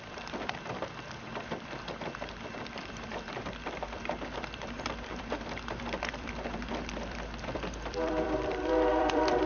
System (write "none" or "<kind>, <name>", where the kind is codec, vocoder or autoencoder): vocoder, BigVGAN v2